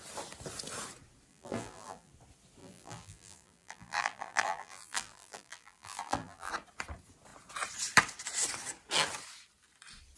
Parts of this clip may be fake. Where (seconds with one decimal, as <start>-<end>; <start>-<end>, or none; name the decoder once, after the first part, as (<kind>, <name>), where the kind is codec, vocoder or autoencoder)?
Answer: 1.3-2.1 (vocoder, BigVGAN v2); 2.6-6.5